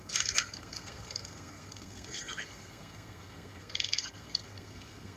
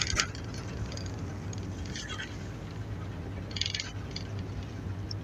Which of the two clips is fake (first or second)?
first